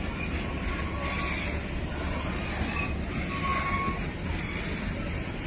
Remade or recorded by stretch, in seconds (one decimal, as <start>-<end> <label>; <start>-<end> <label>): 0.0-5.5 recorded